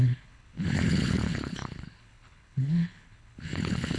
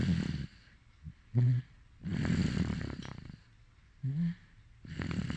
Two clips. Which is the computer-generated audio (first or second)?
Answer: first